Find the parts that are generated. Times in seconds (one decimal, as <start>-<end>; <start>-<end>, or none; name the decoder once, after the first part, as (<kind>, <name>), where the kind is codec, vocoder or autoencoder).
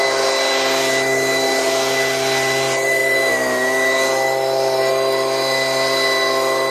none